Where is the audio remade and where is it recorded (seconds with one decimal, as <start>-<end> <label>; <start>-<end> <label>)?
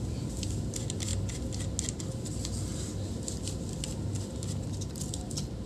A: 0.0-5.7 recorded